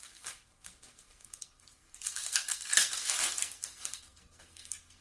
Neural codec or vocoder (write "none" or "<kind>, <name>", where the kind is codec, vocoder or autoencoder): codec, SNAC